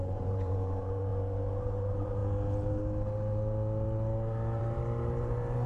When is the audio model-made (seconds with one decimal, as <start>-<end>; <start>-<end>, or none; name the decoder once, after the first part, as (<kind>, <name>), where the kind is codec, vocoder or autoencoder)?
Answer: 0.0-1.1 (vocoder, BigVGAN v2); 1.6-2.2; 4.6-5.7